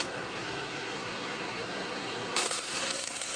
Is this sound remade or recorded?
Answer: remade